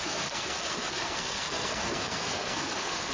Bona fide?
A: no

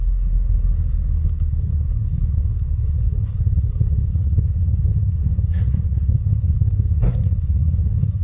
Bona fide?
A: no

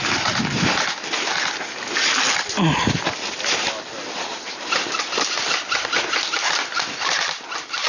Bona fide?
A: yes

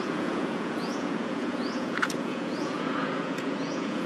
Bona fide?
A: no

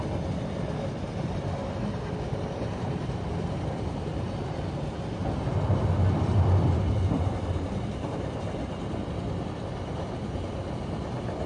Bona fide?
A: yes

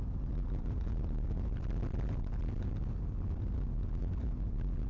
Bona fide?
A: yes